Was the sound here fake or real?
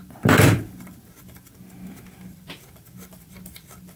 fake